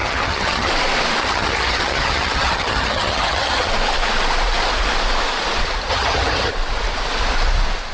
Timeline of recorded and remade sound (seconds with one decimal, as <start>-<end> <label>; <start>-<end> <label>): 0.0-0.7 remade; 0.7-1.2 recorded; 1.2-3.7 remade; 3.7-5.9 recorded; 5.9-6.5 remade; 6.5-7.9 recorded